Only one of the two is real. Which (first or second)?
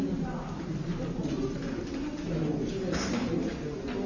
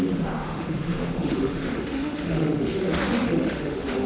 first